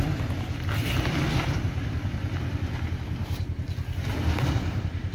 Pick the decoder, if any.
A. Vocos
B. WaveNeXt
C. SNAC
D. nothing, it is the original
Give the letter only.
D